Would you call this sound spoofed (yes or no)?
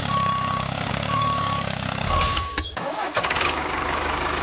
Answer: yes